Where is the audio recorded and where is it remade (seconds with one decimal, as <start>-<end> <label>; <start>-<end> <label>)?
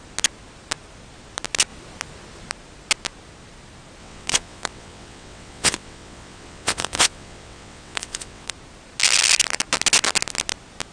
0.0-4.0 recorded; 4.0-8.5 remade; 8.5-10.9 recorded